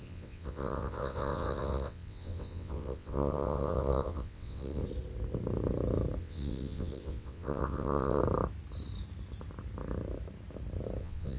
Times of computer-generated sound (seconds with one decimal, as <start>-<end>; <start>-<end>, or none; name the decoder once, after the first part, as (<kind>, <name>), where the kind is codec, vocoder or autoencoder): 0.0-4.8 (vocoder, WaveNeXt); 6.2-8.2; 11.0-11.4